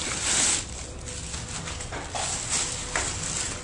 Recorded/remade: recorded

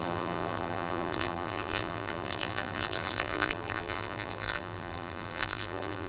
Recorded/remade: remade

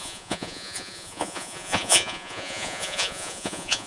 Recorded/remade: remade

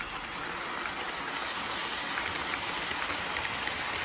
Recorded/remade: recorded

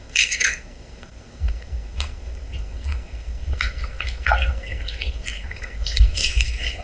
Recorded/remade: remade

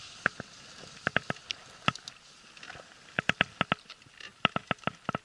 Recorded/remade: recorded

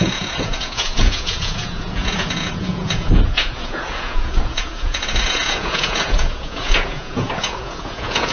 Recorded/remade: remade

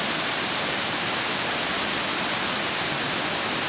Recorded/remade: recorded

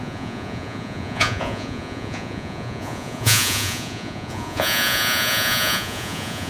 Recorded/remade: remade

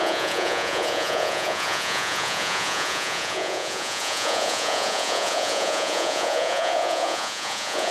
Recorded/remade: remade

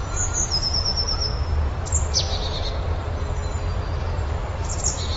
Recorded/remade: recorded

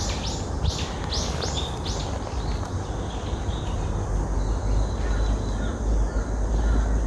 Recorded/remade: recorded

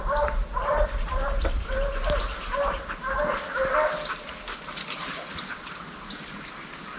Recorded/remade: recorded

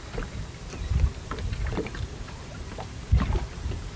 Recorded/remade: remade